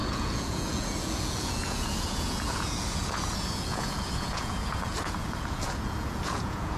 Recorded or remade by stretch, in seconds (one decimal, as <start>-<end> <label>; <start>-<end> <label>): 0.0-6.8 remade